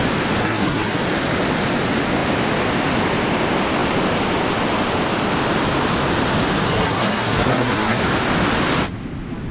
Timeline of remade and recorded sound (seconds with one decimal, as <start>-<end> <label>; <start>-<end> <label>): 0.0-0.4 recorded; 0.4-1.0 remade; 1.0-6.7 recorded; 6.7-8.0 remade; 8.0-9.5 recorded